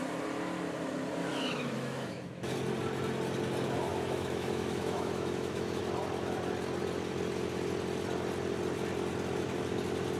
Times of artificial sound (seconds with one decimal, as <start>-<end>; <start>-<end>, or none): 1.3-2.5; 3.9-5.8